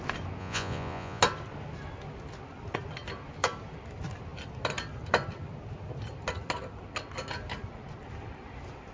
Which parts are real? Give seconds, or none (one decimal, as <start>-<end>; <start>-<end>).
0.0-0.4; 1.2-8.9